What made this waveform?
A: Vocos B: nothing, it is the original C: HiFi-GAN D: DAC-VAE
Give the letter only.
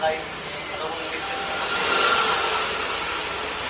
B